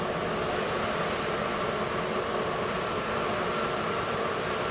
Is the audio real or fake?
real